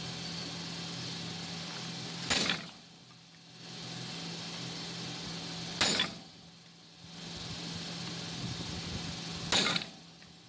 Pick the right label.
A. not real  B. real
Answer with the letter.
B